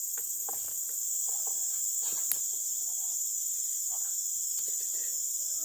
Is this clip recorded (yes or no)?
yes